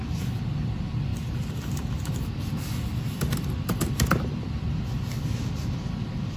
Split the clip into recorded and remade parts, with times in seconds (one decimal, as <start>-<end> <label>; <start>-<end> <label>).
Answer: 0.0-6.4 recorded